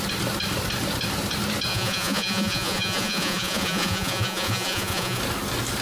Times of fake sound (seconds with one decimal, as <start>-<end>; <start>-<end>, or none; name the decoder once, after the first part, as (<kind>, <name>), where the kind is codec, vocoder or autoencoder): 1.7-5.2 (vocoder, Vocos)